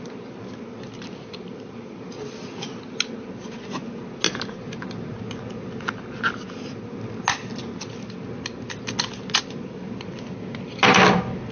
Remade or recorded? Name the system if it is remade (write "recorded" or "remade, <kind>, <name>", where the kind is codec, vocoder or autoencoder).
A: recorded